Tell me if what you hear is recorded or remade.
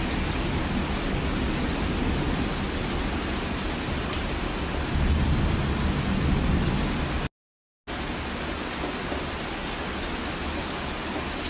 recorded